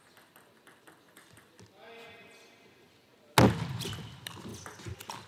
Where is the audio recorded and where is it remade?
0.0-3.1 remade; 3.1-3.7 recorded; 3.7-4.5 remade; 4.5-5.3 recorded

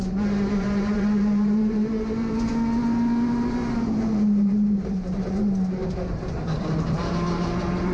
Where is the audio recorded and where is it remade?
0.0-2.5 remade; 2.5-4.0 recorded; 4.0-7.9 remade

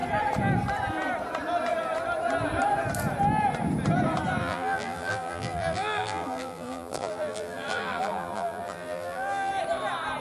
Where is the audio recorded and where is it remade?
0.0-4.4 recorded; 4.4-9.5 remade; 9.5-10.2 recorded

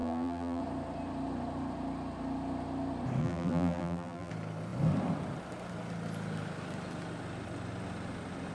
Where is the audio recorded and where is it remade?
0.0-0.6 remade; 0.6-3.2 recorded; 3.2-4.3 remade; 4.3-8.5 recorded

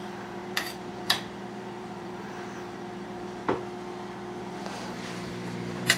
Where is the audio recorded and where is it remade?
0.0-3.4 remade; 3.4-4.4 recorded; 4.4-6.0 remade

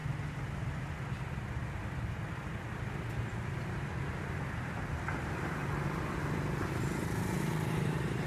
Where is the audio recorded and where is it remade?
0.0-4.7 recorded; 4.7-5.6 remade; 5.6-6.7 recorded; 6.7-8.3 remade

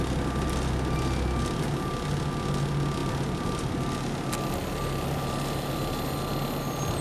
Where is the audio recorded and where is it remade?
0.0-3.0 recorded; 3.0-3.7 remade; 3.7-7.0 recorded

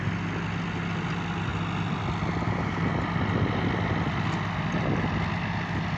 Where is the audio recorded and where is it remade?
0.0-6.0 recorded